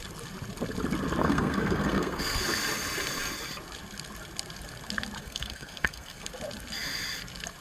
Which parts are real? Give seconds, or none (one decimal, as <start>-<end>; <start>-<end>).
0.0-1.2; 2.4-5.2; 6.3-7.6